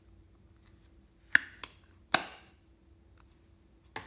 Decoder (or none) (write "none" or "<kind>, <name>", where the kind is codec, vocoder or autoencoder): none